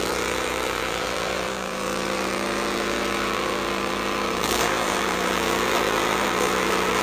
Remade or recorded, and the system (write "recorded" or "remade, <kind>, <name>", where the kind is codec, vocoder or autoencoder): remade, vocoder, BigVGAN v2